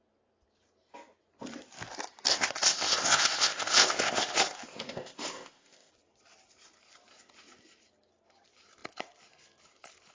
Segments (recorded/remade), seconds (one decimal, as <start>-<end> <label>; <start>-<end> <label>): 0.0-2.3 recorded; 2.3-5.9 remade; 5.9-10.1 recorded